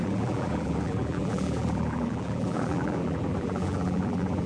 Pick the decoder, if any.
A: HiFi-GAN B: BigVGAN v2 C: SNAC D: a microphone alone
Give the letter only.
B